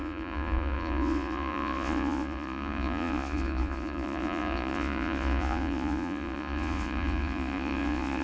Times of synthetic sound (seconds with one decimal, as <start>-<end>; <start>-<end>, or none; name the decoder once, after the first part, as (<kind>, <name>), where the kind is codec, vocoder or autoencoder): 0.0-8.2 (vocoder, Vocos)